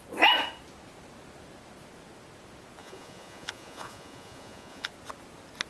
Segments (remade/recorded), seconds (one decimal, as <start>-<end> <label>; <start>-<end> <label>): 0.0-2.8 recorded; 2.8-4.9 remade; 4.9-5.7 recorded